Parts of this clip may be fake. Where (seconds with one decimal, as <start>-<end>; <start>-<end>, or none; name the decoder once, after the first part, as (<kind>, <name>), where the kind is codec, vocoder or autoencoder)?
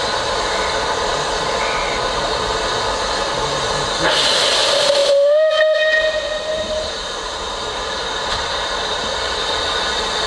5.0-9.5 (vocoder, BigVGAN v2)